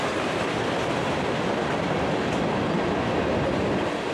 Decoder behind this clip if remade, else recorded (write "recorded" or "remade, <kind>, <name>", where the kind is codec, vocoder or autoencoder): recorded